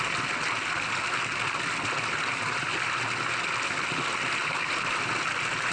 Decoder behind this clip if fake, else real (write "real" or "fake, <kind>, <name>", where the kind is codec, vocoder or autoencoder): real